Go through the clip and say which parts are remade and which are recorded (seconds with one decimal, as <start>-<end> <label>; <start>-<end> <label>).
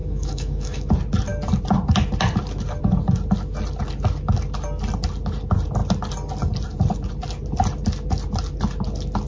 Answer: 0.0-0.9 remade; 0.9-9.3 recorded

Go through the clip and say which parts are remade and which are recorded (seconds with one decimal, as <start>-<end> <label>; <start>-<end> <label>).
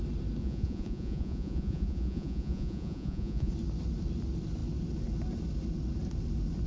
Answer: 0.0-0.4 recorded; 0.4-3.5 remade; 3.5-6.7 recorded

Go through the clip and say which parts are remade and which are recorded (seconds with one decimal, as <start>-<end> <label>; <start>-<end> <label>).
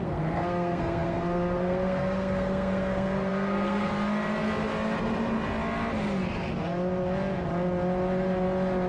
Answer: 0.0-3.9 remade; 3.9-8.9 recorded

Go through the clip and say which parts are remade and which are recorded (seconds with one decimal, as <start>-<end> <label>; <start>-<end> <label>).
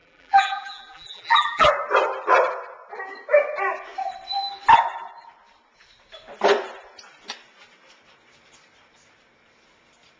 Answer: 0.0-1.7 remade; 1.7-10.2 recorded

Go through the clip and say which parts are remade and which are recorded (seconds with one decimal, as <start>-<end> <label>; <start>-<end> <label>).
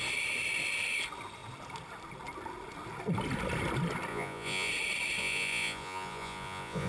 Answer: 0.0-4.1 recorded; 4.1-4.7 remade; 4.7-5.2 recorded; 5.2-6.9 remade